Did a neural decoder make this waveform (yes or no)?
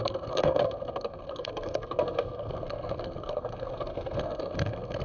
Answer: yes